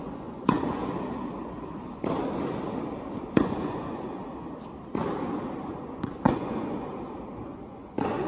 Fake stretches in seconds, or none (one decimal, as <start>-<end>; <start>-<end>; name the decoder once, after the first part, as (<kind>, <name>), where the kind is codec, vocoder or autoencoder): 0.0-0.8 (vocoder, Vocos); 3.2-4.2; 5.7-6.9; 7.4-8.3